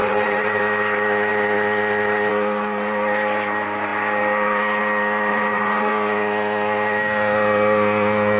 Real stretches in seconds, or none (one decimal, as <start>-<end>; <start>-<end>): 0.6-5.3; 5.9-8.4